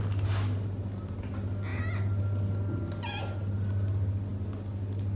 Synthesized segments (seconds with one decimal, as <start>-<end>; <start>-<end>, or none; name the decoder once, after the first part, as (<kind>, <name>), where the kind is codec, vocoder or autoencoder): none